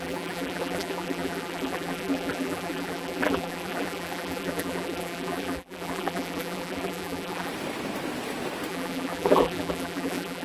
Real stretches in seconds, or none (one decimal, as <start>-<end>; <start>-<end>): 7.5-8.7